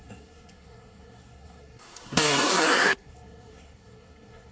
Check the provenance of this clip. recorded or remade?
remade